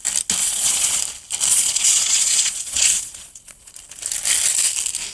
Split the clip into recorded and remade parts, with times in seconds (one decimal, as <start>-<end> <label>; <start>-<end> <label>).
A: 0.0-0.4 recorded; 0.4-1.0 remade; 1.0-1.5 recorded; 1.5-3.7 remade; 3.7-5.1 recorded